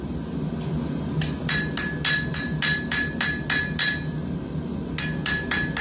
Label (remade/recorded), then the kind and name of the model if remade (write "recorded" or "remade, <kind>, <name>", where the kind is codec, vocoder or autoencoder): recorded